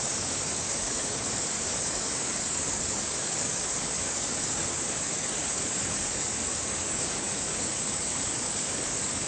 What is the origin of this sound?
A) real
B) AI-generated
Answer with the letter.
B